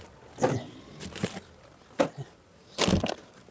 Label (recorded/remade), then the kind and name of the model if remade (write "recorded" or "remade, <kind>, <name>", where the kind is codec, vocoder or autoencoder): recorded